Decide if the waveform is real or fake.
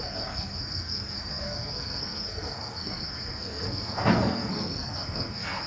fake